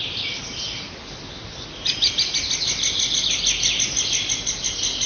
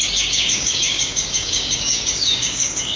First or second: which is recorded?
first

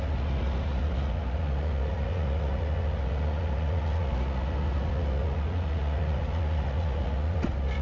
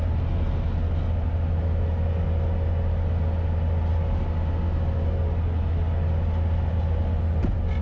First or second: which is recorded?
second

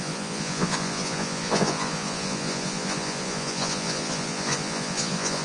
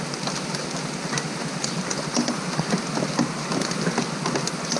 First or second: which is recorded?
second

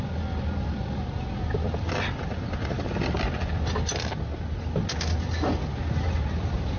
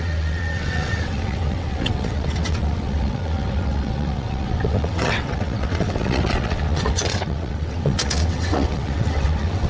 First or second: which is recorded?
first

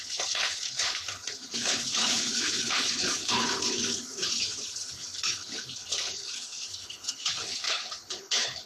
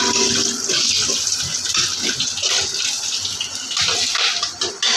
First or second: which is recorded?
second